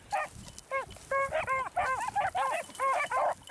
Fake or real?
real